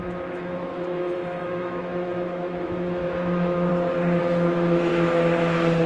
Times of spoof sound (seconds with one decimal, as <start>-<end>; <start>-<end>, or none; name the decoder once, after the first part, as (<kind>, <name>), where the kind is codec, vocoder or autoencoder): 0.0-3.7 (autoencoder, DAC-VAE); 4.2-4.9